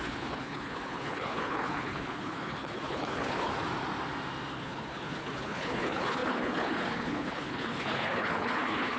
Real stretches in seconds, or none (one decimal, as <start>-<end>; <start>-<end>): 3.5-4.5